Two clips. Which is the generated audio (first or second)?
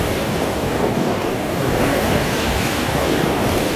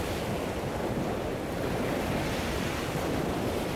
first